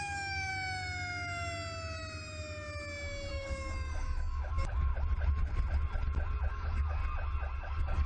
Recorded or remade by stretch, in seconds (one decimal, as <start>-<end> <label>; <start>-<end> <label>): 0.0-0.5 remade; 0.5-3.3 recorded; 3.3-4.9 remade; 4.9-6.5 recorded; 6.5-7.0 remade; 7.0-7.6 recorded; 7.6-8.1 remade